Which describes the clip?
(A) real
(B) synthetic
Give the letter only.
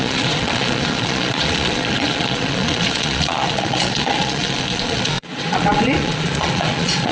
B